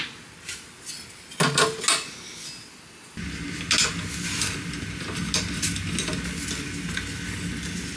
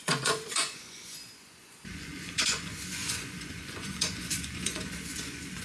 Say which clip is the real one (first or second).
first